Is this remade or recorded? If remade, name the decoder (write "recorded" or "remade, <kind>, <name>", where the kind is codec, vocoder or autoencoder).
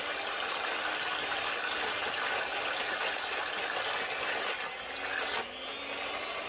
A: recorded